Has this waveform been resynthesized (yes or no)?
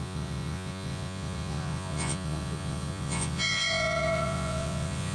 yes